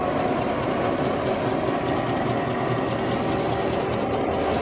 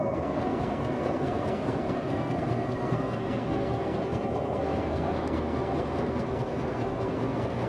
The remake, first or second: second